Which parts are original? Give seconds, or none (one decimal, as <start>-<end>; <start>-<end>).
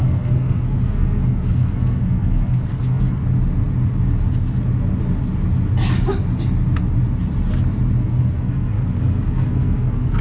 3.2-8.0